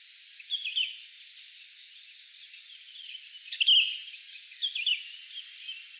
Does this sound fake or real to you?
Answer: real